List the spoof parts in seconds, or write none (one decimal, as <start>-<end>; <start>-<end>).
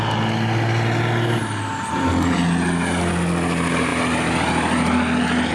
none